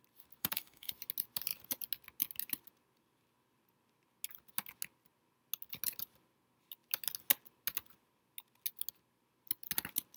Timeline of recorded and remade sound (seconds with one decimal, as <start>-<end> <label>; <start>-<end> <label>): 0.0-0.4 recorded; 0.4-0.9 remade; 0.9-10.2 recorded